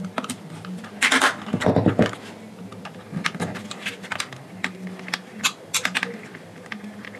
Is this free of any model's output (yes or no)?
yes